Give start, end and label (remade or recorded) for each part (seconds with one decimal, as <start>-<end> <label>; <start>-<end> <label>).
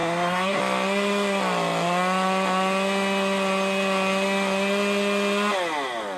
0.0-0.6 remade; 0.6-6.2 recorded